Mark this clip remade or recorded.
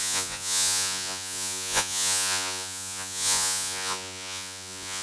remade